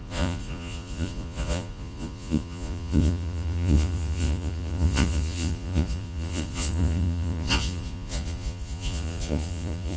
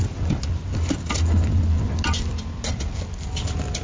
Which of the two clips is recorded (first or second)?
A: second